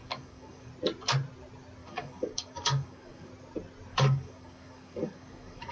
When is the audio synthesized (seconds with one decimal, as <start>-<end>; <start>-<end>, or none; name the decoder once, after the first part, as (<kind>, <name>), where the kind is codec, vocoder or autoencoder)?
0.0-0.7 (codec, DAC); 1.8-3.3; 3.9-5.7